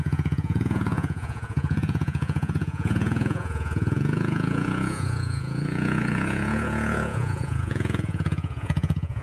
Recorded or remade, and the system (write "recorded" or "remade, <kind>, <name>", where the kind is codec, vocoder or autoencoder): remade, vocoder, Vocos